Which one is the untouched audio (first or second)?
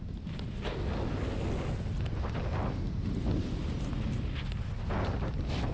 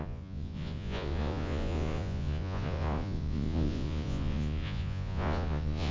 first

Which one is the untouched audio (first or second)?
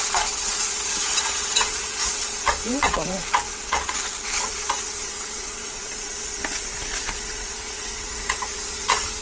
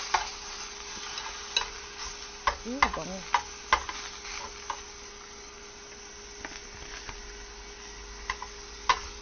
second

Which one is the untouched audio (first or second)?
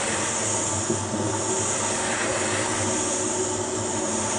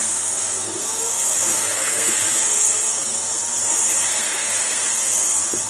first